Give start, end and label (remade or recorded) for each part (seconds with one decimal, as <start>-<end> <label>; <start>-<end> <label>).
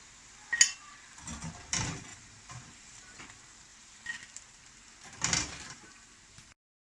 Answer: 0.0-2.1 recorded; 2.1-3.2 remade; 3.2-3.7 recorded; 3.7-6.5 remade; 6.5-7.0 recorded